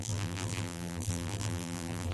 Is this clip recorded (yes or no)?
no